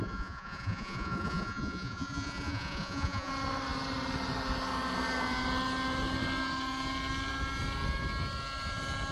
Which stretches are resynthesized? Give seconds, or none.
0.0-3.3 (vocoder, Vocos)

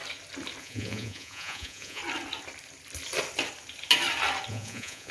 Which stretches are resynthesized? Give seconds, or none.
0.6-2.0 (vocoder, Vocos); 4.5-5.1

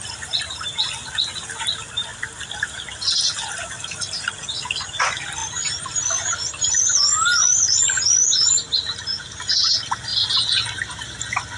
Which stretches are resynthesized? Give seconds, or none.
none

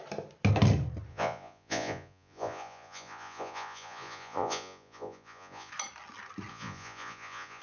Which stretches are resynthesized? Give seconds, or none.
1.1-5.7 (vocoder, Vocos); 6.5-7.6

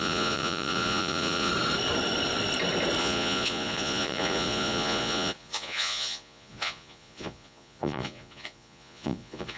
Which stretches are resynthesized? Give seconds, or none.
0.0-1.5 (vocoder, Vocos); 3.0-9.6

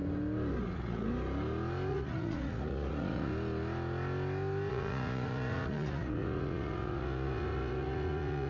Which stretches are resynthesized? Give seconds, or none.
0.6-1.1 (vocoder, Vocos); 1.9-3.3; 4.7-8.5

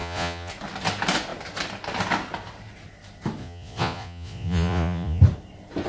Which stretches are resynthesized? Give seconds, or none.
0.0-0.5 (vocoder, Vocos); 3.4-5.2

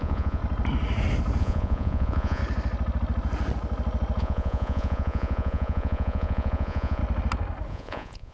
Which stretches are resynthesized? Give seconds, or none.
0.0-0.4 (vocoder, Vocos); 1.4-2.4; 4.2-7.0; 7.7-8.3